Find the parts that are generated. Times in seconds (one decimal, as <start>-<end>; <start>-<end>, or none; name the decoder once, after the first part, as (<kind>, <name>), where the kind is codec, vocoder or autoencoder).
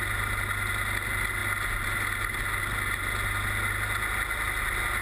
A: none